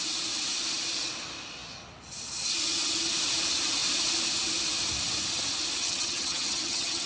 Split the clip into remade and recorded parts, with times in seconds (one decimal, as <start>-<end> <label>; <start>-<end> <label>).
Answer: 0.0-5.8 recorded; 5.8-7.1 remade